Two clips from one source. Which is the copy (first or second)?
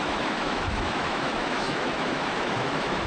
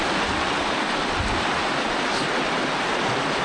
first